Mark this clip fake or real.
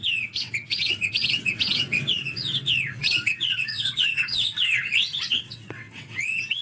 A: fake